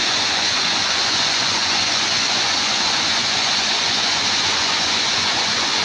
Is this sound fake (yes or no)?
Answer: yes